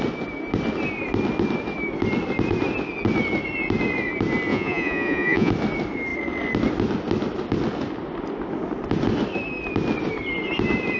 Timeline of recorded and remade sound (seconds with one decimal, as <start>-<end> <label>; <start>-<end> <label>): 0.0-4.5 recorded; 4.5-5.5 remade; 5.5-11.0 recorded